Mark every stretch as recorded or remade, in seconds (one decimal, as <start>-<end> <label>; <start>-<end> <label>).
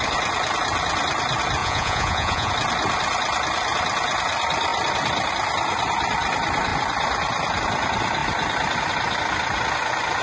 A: 0.0-1.6 recorded; 1.6-2.5 remade; 2.5-10.2 recorded